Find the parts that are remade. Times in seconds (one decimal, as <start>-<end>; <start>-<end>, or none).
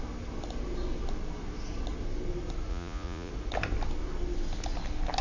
2.7-3.3